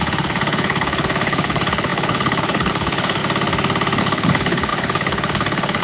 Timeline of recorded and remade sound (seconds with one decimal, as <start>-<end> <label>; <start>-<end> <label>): 0.0-3.2 remade; 3.2-4.0 recorded; 4.0-5.8 remade